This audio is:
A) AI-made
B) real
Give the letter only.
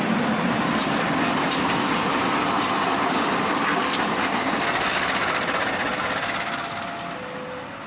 B